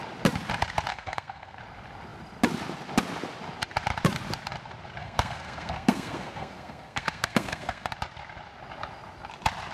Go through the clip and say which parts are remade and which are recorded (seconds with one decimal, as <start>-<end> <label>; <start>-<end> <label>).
0.0-0.9 recorded; 0.9-1.6 remade; 1.6-5.0 recorded; 5.0-7.9 remade; 7.9-9.7 recorded